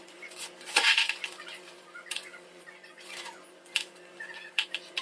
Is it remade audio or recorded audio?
remade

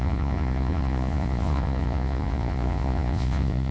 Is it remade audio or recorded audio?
remade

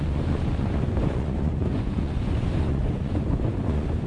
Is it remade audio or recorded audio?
remade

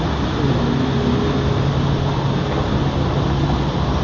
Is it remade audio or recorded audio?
recorded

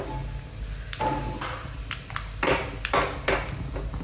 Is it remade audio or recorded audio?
recorded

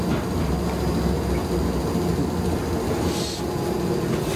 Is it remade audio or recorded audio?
recorded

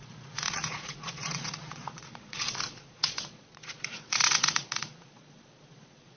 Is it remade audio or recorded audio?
remade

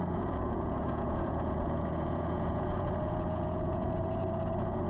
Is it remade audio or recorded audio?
remade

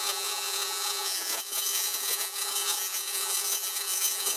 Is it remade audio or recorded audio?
remade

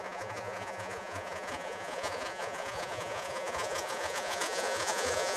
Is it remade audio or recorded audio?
remade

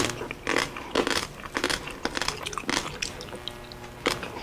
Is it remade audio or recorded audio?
recorded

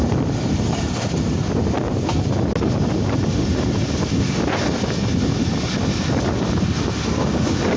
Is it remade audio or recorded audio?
recorded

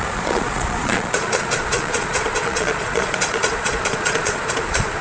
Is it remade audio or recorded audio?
remade